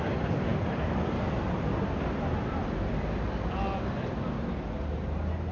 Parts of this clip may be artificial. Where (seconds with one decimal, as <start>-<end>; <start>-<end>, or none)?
none